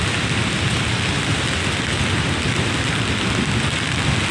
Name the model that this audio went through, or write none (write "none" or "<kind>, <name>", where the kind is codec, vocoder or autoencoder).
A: none